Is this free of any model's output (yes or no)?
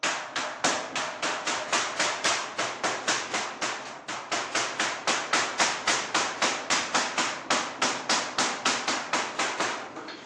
yes